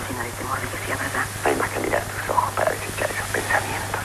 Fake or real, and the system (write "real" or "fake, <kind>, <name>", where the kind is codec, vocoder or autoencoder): real